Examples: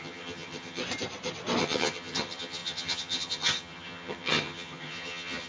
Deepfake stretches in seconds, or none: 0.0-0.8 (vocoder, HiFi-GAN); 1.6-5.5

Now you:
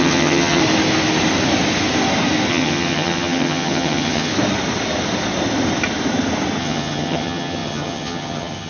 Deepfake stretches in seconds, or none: 0.0-0.6 (vocoder, HiFi-GAN); 2.5-4.3; 6.6-8.7

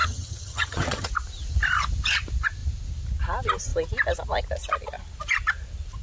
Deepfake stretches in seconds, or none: 0.0-1.1 (vocoder, HiFi-GAN)

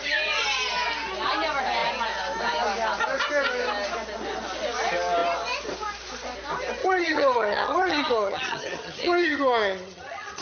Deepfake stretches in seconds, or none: 6.8-10.4 (vocoder, HiFi-GAN)